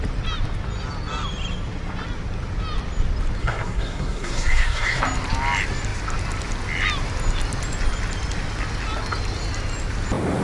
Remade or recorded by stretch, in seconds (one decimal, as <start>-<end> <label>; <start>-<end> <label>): 0.0-3.4 recorded; 3.4-5.0 remade; 5.0-10.4 recorded